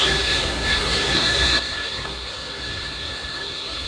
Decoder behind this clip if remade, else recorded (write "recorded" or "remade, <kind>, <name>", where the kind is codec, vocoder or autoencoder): remade, codec, SNAC